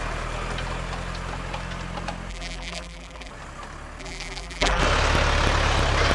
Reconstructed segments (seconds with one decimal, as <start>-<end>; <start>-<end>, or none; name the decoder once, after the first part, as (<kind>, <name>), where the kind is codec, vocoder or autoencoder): 2.3-3.3 (vocoder, BigVGAN v2); 4.0-4.8